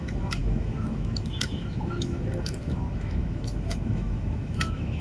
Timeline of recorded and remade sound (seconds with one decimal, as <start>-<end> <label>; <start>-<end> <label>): 0.0-5.0 remade